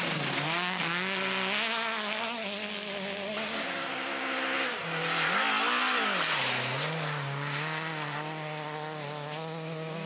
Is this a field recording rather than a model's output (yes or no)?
yes